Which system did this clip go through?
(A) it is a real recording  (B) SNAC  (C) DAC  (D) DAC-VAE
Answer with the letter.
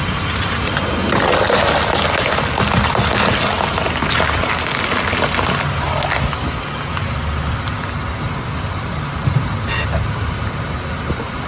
A